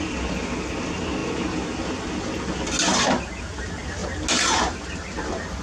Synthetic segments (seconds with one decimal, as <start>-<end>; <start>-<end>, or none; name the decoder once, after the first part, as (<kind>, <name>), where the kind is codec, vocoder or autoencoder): none